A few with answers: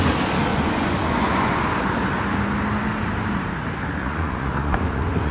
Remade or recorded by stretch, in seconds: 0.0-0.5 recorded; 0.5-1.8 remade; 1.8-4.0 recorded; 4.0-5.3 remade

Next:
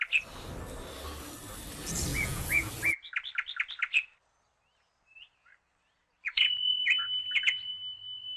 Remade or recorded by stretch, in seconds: 0.0-2.1 recorded; 2.1-2.7 remade; 2.7-8.4 recorded

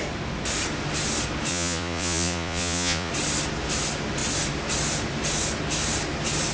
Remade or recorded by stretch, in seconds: 0.0-1.5 recorded; 1.5-3.1 remade; 3.1-6.5 recorded

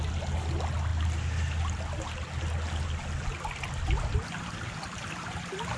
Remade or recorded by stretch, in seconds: 0.0-5.8 recorded

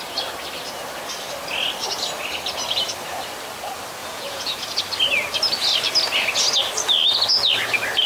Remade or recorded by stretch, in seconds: 0.0-4.0 recorded; 4.0-4.8 remade; 4.8-8.1 recorded